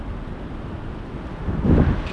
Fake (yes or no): no